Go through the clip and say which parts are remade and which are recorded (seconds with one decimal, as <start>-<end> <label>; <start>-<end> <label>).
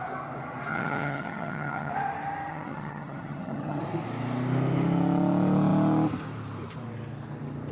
0.0-0.7 recorded; 0.7-1.9 remade; 1.9-2.5 recorded; 2.5-3.8 remade; 3.8-7.7 recorded